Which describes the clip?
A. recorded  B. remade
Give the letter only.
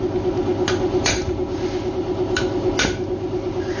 A